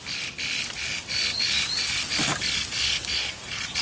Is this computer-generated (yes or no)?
no